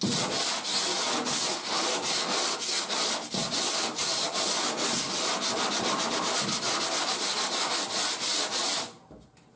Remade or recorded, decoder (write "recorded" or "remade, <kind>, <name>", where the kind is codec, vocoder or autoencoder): recorded